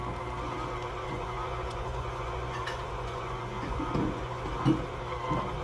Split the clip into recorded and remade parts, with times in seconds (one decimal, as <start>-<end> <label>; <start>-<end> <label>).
0.0-1.0 recorded; 1.0-4.4 remade; 4.4-5.6 recorded